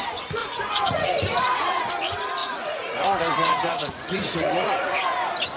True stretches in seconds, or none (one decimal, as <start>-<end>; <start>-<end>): 0.0-0.4; 1.8-2.4; 5.0-5.6